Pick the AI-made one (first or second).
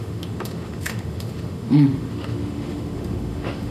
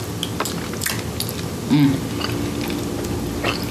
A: first